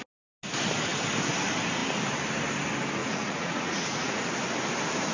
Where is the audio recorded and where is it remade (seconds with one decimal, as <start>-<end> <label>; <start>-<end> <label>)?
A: 0.0-3.0 recorded; 3.0-4.2 remade; 4.2-5.1 recorded